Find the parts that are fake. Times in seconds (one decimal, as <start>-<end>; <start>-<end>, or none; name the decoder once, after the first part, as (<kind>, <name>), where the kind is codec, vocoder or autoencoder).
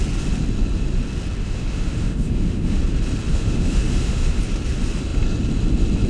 1.4-2.8 (autoencoder, DAC-VAE); 3.3-4.4